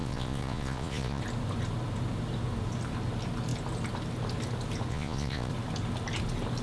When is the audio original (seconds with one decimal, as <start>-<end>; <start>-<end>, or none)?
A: 1.2-4.9; 5.5-6.6